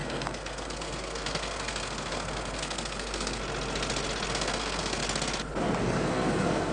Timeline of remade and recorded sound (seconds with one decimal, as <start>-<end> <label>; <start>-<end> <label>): 0.0-3.4 remade; 3.4-4.3 recorded; 4.3-5.0 remade; 5.0-5.8 recorded; 5.8-6.7 remade